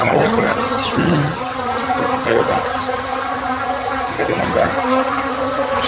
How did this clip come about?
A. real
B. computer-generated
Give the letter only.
B